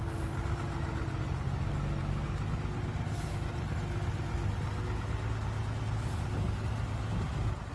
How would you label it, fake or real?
real